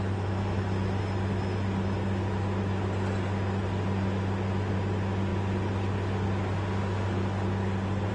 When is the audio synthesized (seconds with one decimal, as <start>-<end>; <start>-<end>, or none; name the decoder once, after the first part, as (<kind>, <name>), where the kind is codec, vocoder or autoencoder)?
none